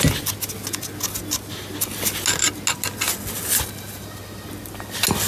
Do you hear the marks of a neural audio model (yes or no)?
no